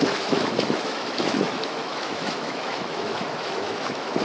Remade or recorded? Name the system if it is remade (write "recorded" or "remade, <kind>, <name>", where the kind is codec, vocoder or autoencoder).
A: remade, autoencoder, DAC-VAE